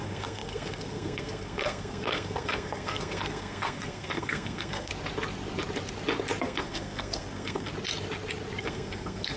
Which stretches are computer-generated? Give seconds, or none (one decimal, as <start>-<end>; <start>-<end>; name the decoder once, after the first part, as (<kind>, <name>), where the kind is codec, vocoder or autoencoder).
0.0-4.9 (codec, SNAC); 6.4-7.7; 8.6-9.4